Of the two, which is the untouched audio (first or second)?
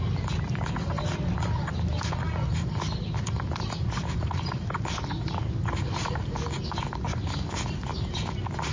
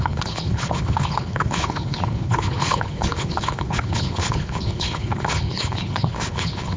first